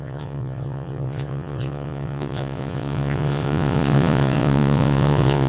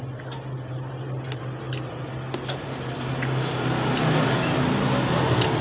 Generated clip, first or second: first